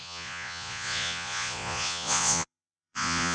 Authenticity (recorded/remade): remade